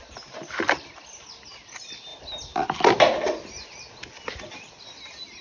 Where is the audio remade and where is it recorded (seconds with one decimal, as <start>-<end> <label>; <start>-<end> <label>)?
0.0-5.4 recorded